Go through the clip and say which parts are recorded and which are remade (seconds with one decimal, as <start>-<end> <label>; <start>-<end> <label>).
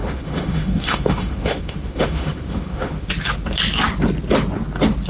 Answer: 0.0-3.1 remade; 3.1-5.1 recorded